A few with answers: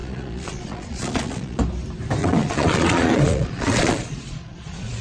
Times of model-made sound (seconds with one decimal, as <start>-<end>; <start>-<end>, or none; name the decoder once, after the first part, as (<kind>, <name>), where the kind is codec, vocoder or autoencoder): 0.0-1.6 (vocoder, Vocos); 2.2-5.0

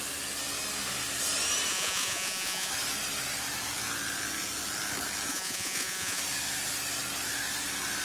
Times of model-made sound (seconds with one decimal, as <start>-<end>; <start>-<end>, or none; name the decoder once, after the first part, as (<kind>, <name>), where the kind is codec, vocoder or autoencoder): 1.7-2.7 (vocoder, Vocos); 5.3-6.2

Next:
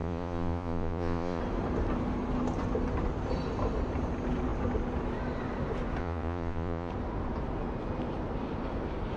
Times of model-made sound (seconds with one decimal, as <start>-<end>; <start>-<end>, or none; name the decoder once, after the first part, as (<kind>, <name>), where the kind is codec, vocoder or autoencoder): 0.0-1.4 (vocoder, Vocos); 6.0-6.9

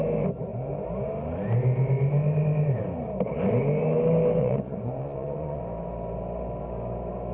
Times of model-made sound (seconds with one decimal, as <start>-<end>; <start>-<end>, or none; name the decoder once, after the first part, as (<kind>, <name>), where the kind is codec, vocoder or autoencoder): 4.4-5.6 (vocoder, Vocos)

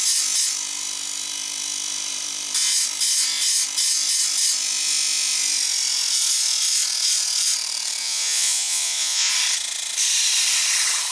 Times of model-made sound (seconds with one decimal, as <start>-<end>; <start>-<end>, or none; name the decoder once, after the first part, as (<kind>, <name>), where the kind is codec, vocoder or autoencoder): 8.0-9.3 (vocoder, Vocos)

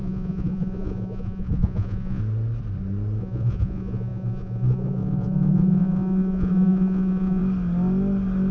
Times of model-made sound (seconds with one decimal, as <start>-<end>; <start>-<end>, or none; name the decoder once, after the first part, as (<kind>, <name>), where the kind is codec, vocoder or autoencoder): 0.0-2.2 (vocoder, Vocos); 3.2-7.4